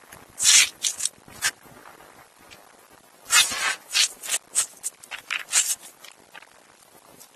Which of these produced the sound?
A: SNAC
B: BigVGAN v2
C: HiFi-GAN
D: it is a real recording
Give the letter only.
D